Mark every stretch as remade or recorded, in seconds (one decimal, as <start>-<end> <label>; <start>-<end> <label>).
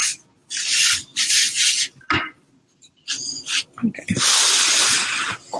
0.0-5.6 recorded